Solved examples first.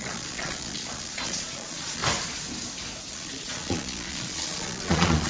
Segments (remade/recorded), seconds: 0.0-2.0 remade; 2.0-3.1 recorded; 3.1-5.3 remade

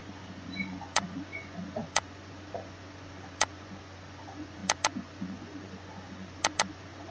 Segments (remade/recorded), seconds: 0.0-7.1 remade

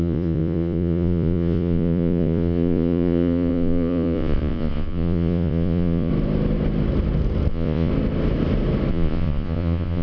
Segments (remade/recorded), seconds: 0.0-6.1 remade; 6.1-7.5 recorded; 7.5-7.9 remade; 7.9-8.9 recorded; 8.9-10.0 remade

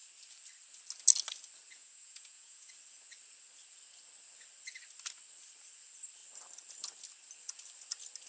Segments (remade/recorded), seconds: 0.0-1.8 recorded; 1.8-2.7 remade; 2.7-8.3 recorded

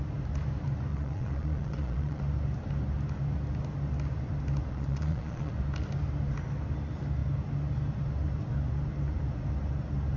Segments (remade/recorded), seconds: 0.0-0.9 recorded; 0.9-2.2 remade; 2.2-4.7 recorded; 4.7-5.5 remade; 5.5-10.2 recorded

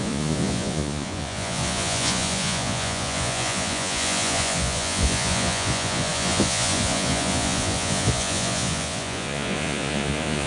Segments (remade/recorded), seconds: 0.0-10.5 remade